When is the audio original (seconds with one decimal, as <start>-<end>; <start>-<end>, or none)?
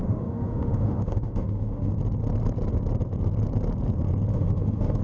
1.9-4.3